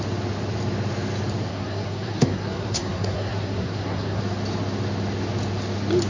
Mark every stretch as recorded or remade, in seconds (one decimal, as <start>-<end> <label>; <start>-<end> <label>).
0.0-1.5 recorded; 1.5-4.2 remade; 4.2-6.1 recorded

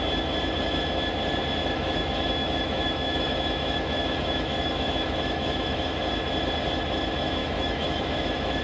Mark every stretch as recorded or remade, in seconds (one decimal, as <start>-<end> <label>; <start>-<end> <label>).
0.0-1.6 recorded; 1.6-5.9 remade; 5.9-7.4 recorded; 7.4-8.6 remade